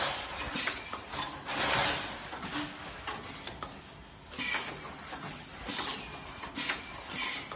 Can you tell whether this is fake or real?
real